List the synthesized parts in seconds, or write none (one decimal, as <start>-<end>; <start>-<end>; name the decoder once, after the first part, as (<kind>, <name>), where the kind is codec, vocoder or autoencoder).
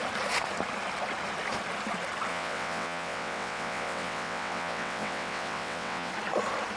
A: 2.3-6.1 (vocoder, WaveNeXt)